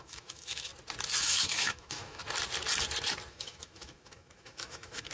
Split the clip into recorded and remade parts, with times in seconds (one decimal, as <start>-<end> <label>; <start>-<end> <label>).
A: 0.0-0.7 remade; 0.7-1.2 recorded; 1.2-2.2 remade; 2.2-3.3 recorded; 3.3-5.1 remade